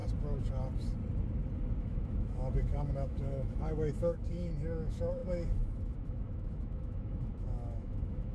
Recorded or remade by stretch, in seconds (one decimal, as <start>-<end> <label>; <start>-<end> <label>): 0.0-1.8 recorded; 1.8-8.3 remade